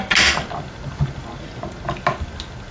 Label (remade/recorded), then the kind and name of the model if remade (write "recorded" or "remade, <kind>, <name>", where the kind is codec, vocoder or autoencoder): recorded